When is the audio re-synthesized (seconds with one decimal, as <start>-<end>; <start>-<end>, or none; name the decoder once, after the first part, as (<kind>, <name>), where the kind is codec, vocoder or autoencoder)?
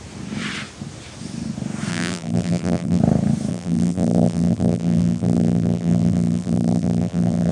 1.9-3.0 (vocoder, BigVGAN v2); 3.5-7.5